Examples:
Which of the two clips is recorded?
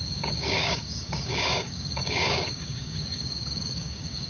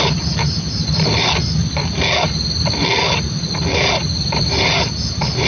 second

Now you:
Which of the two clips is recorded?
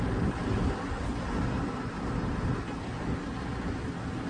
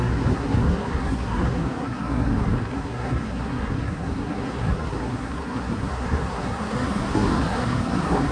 first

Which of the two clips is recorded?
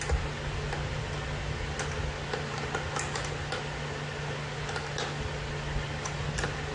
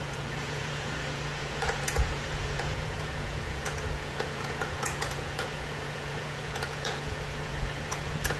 first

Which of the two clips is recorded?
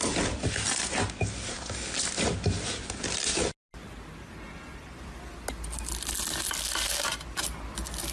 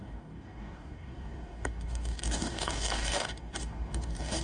first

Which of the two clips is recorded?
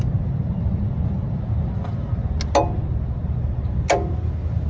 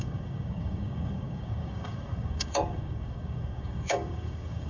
first